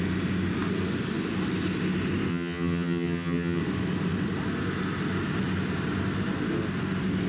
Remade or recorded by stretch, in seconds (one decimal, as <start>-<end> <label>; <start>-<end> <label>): 0.0-2.3 recorded; 2.3-3.6 remade; 3.6-7.3 recorded